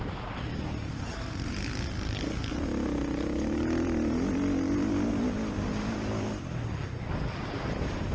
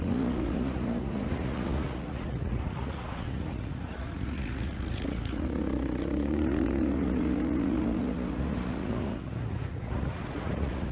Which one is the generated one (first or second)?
second